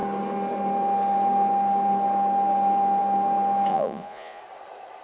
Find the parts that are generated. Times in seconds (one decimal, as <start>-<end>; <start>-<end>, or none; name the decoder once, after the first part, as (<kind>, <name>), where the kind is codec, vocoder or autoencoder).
3.7-4.4 (vocoder, Vocos)